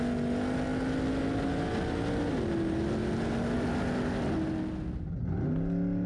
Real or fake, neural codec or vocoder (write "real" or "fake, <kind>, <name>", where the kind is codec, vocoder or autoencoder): real